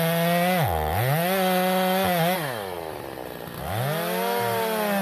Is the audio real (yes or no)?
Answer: yes